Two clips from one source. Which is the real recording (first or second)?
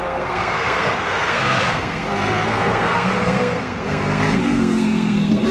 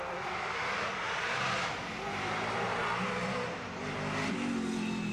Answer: second